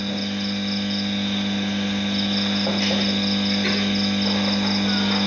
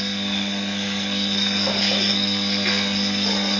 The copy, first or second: second